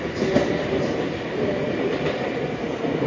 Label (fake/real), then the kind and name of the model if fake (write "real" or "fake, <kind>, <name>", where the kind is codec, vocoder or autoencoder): fake, vocoder, BigVGAN v2